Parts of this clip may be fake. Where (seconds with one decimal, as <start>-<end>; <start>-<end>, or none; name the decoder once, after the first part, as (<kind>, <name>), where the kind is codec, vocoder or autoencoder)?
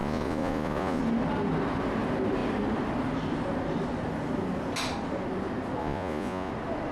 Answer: 0.0-1.0 (vocoder, Vocos); 5.8-6.5